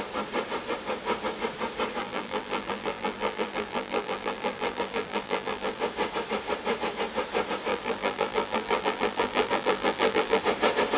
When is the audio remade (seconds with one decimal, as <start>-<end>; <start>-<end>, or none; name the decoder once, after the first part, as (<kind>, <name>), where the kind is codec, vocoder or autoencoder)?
2.0-5.8 (vocoder, BigVGAN v2); 7.7-10.4